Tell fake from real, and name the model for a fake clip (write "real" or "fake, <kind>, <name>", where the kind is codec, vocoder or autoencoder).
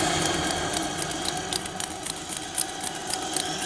real